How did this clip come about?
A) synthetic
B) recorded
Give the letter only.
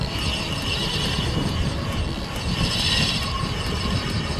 A